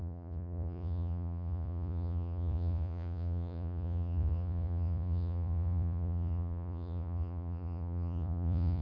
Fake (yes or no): yes